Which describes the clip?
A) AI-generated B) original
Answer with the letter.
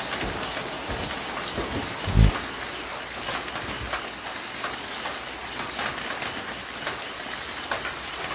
B